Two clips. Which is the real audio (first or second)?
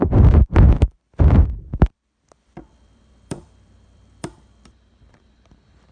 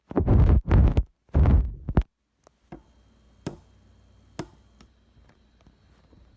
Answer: second